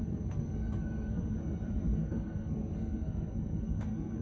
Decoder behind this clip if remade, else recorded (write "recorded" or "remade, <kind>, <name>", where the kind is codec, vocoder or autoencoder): remade, codec, SNAC